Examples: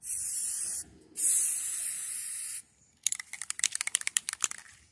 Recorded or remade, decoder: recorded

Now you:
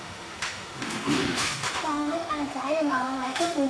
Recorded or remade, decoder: remade, autoencoder, DAC-VAE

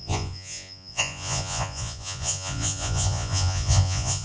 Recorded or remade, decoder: remade, vocoder, Vocos